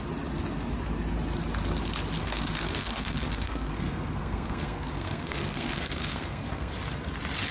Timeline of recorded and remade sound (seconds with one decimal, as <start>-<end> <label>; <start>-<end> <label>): 0.0-2.2 recorded; 2.2-6.7 remade; 6.7-7.5 recorded